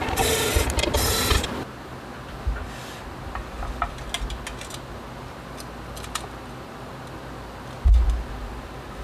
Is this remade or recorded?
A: recorded